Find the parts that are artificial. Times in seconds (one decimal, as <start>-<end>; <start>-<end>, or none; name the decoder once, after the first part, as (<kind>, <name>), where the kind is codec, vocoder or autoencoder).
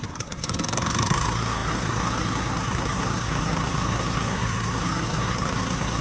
0.0-6.0 (codec, SNAC)